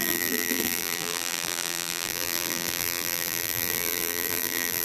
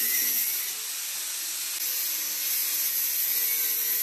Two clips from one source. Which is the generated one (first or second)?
first